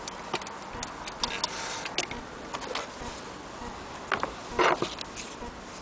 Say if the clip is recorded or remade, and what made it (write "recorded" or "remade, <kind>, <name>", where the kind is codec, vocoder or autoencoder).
recorded